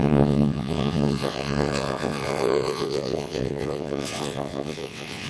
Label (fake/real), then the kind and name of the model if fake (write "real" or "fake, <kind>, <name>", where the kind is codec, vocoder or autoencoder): fake, vocoder, WaveNeXt